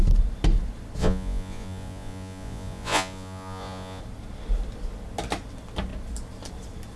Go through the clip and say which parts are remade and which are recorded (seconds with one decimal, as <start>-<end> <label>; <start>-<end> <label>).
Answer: 0.0-1.0 recorded; 1.0-4.0 remade; 4.0-7.0 recorded